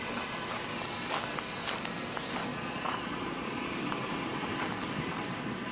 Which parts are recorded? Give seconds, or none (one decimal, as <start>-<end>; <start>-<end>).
0.0-2.5; 3.8-5.7